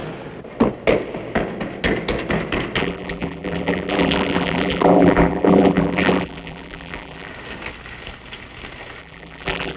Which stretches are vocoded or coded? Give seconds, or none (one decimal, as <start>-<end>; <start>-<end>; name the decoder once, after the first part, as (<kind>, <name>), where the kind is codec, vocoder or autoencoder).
2.8-7.3 (vocoder, BigVGAN v2); 9.0-9.8